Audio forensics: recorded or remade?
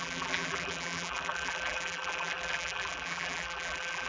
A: remade